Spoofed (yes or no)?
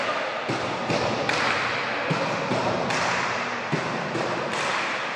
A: no